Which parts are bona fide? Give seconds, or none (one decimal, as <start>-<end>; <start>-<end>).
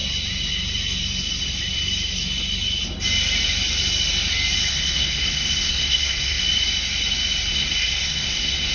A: 0.0-4.7; 6.4-7.5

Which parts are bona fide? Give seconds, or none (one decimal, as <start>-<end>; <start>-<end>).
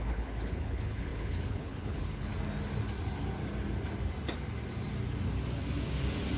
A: 2.3-6.4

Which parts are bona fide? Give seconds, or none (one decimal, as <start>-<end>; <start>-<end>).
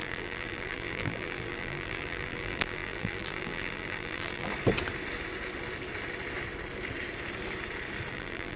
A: 4.5-8.1